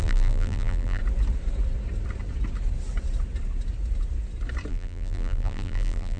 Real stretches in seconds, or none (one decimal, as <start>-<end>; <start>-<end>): 1.0-4.7